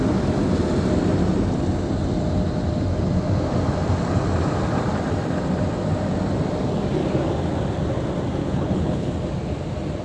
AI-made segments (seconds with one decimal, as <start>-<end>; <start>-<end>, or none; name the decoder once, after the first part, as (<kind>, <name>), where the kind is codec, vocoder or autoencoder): 8.4-9.1 (codec, HILCodec)